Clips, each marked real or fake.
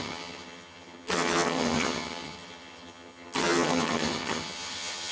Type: fake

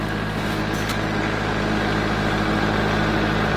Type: real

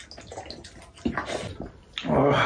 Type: real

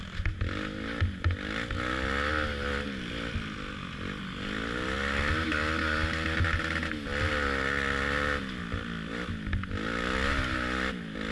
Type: real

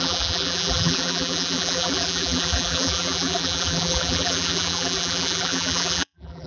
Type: fake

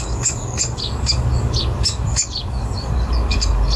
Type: fake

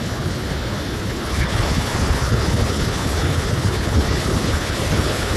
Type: fake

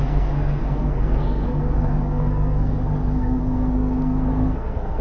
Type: fake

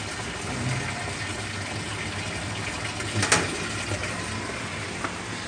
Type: real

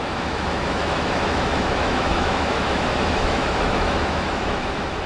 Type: fake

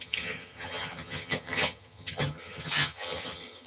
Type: fake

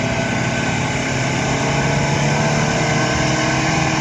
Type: real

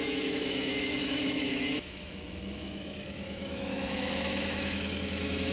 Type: fake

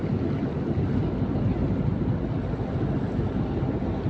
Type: real